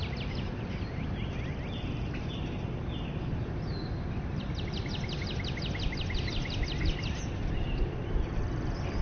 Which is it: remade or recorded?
recorded